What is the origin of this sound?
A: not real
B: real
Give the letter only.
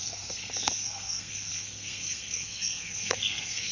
A